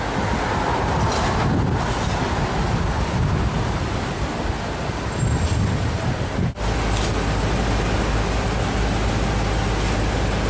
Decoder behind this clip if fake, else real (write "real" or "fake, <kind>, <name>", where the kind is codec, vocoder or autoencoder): real